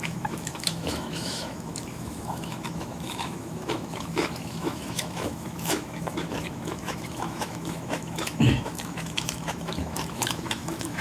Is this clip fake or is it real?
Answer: fake